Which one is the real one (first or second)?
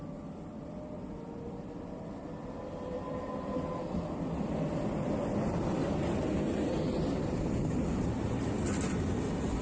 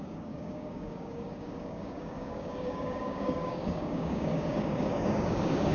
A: first